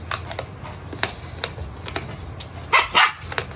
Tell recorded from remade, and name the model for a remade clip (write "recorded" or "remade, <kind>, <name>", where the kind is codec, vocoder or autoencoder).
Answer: recorded